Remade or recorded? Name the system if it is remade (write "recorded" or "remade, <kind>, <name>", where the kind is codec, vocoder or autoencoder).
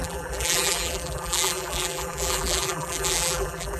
remade, vocoder, BigVGAN v2